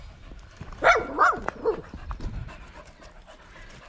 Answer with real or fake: real